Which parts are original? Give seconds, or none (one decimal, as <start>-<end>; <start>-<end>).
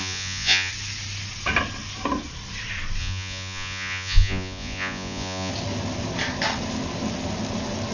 0.7-3.0; 5.5-7.9